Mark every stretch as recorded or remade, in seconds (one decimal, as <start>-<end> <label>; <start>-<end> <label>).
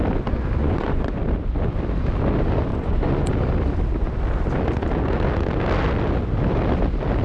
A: 0.0-0.6 recorded; 0.6-1.2 remade; 1.2-2.7 recorded; 2.7-3.3 remade; 3.3-7.2 recorded